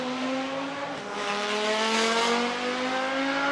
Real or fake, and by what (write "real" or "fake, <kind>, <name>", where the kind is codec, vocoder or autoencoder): real